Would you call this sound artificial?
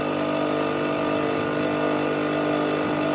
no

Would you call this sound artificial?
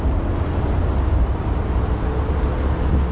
no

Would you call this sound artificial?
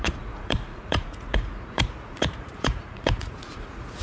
yes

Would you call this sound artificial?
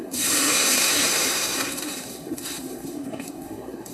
yes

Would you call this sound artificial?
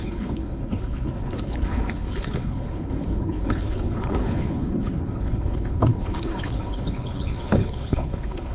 yes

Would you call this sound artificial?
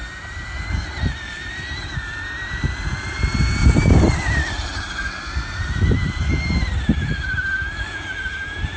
no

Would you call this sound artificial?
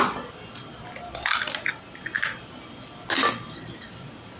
no